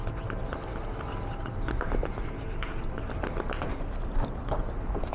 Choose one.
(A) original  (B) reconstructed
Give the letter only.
A